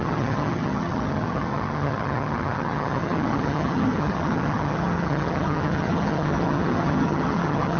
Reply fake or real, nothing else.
fake